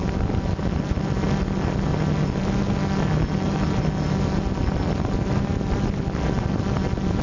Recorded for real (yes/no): yes